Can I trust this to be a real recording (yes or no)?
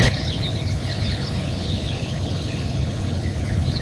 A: no